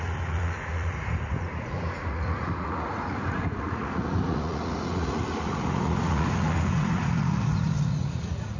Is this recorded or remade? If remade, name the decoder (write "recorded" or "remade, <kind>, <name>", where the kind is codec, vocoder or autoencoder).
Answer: remade, vocoder, Vocos